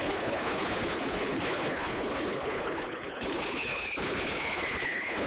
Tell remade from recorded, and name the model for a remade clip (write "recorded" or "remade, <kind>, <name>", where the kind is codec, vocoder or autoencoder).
remade, codec, HILCodec